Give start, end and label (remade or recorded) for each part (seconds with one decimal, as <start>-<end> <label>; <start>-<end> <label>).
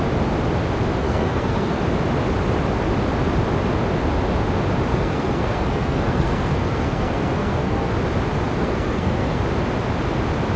0.0-1.0 recorded; 1.0-1.8 remade; 1.8-4.9 recorded; 4.9-7.9 remade; 7.9-8.6 recorded; 8.6-9.4 remade; 9.4-10.6 recorded